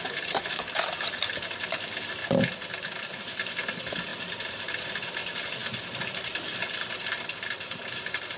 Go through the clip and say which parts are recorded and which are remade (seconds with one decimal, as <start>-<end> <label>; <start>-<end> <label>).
0.0-2.2 remade; 2.2-3.2 recorded; 3.2-8.4 remade